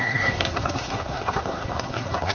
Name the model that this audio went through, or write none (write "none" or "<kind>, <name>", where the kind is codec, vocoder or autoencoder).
codec, SNAC